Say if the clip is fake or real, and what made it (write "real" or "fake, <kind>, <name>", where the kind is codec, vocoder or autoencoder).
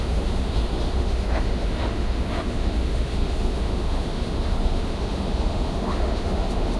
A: fake, autoencoder, DAC-VAE